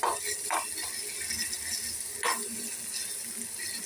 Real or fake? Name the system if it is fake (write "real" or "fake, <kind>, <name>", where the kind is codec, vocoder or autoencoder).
real